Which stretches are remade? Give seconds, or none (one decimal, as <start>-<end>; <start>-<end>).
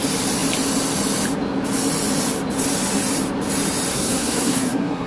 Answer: 3.9-5.1